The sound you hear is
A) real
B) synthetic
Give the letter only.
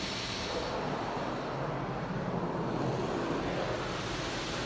A